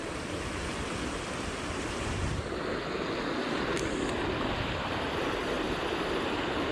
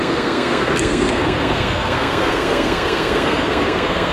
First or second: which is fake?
second